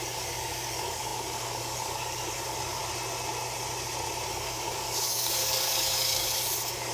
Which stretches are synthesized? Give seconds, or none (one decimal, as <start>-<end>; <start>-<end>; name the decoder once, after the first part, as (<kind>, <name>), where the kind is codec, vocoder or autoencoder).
0.0-2.8 (codec, DAC); 4.3-6.9